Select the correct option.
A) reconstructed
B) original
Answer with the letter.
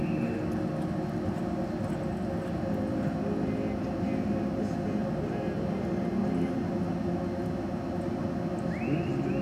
B